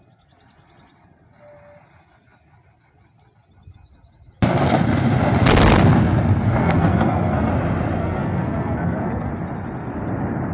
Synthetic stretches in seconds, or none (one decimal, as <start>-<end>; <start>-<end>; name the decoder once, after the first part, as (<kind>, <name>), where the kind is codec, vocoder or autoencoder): 6.6-7.5 (codec, SNAC); 8.0-9.3